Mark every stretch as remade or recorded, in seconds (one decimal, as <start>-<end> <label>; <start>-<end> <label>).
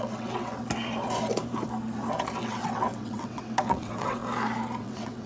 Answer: 0.0-0.5 remade; 0.5-2.4 recorded; 2.4-4.2 remade; 4.2-4.8 recorded; 4.8-5.3 remade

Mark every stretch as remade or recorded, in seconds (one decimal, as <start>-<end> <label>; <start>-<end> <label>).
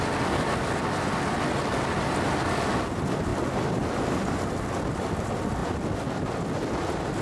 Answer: 0.0-7.2 recorded